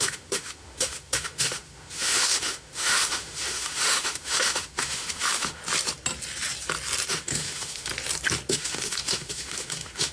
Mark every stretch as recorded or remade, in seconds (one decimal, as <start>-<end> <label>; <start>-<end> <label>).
0.0-5.6 remade; 5.6-7.1 recorded; 7.1-7.9 remade; 7.9-8.5 recorded; 8.5-10.1 remade